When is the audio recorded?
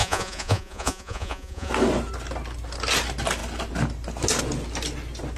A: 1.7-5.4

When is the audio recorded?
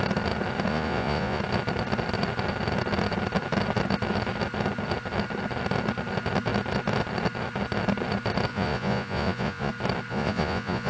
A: 0.0-0.7; 1.4-8.5; 9.7-10.1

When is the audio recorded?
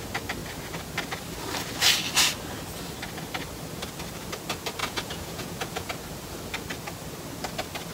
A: 0.0-4.8; 5.9-7.9